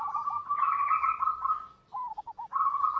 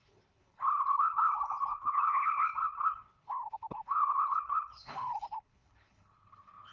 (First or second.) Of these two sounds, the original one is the first